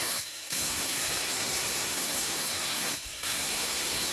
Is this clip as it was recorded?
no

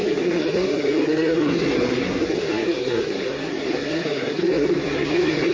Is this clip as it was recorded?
no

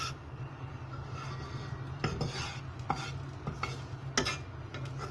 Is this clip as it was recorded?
yes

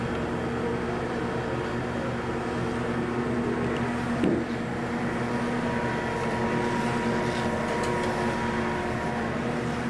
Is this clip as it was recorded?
yes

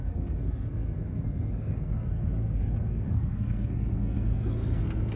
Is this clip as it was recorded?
no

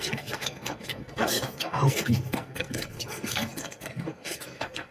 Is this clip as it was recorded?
no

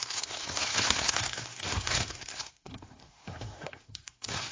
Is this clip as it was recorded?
no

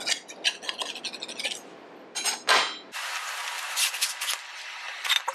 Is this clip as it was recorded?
yes